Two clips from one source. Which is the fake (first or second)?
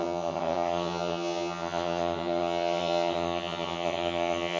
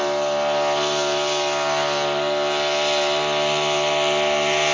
first